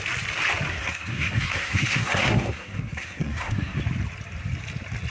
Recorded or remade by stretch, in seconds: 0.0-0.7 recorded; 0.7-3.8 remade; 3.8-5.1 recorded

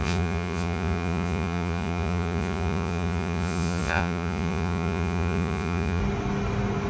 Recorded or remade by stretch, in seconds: 0.0-6.0 remade; 6.0-6.9 recorded

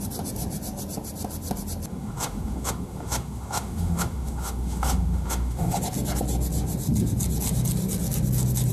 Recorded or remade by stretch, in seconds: 0.0-1.9 recorded; 1.9-5.8 remade; 5.8-8.7 recorded

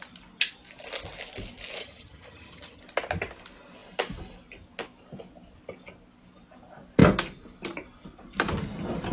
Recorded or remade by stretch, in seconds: 0.0-1.8 recorded; 1.8-2.8 remade; 2.8-9.1 recorded

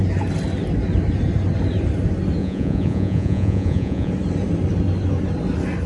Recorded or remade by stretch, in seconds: 0.0-2.4 recorded; 2.4-4.1 remade; 4.1-5.9 recorded